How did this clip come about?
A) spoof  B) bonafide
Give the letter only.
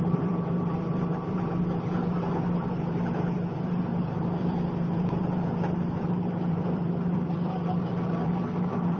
A